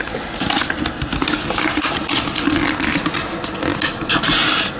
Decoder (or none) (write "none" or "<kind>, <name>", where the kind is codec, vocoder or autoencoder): none